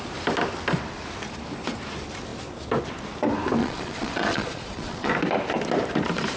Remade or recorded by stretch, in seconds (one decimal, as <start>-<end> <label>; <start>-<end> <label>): 0.0-3.6 recorded; 3.6-5.1 remade; 5.1-6.4 recorded